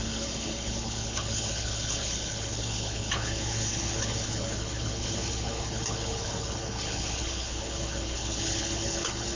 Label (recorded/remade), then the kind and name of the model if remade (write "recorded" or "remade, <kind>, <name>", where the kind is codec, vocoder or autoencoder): remade, codec, HILCodec